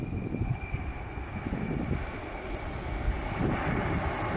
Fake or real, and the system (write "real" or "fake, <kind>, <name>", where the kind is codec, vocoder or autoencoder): real